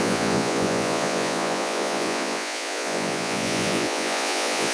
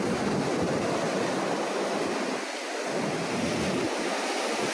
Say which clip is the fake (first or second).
first